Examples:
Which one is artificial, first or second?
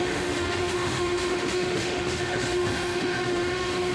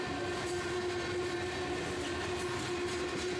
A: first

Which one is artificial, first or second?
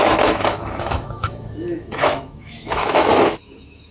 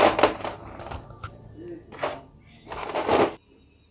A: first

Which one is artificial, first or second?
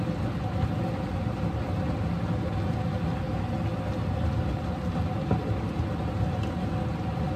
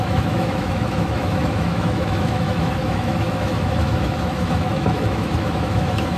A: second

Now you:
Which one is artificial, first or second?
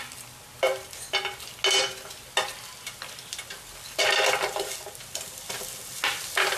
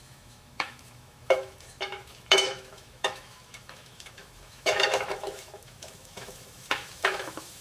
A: second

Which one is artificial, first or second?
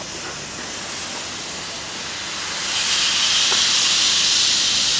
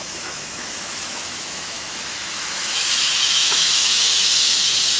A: second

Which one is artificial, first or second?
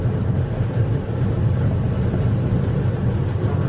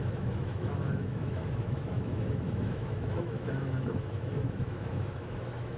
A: second